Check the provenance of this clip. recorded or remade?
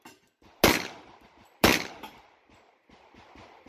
recorded